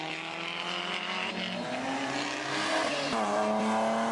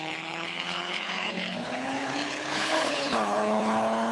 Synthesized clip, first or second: second